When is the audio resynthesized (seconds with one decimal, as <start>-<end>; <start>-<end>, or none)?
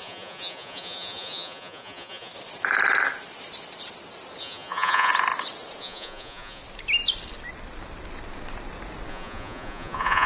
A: 0.0-2.3; 4.4-5.1; 5.8-6.6; 9.1-10.3